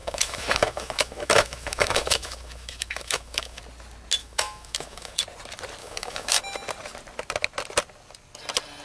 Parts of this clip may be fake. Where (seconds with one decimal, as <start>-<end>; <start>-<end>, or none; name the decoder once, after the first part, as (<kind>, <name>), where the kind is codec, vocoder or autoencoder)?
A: 0.0-3.6 (autoencoder, DAC-VAE); 4.2-5.2; 5.8-6.4